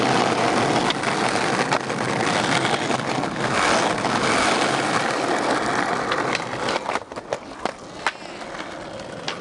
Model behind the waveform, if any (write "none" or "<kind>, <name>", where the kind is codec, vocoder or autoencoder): none